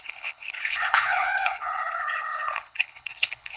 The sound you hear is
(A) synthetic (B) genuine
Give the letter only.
A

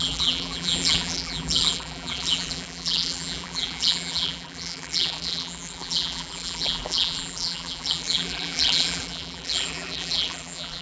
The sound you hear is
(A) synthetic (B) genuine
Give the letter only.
A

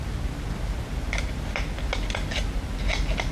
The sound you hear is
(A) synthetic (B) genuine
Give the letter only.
B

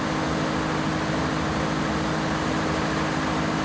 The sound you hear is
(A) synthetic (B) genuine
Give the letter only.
B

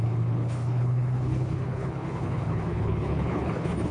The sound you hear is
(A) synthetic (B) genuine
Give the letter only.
A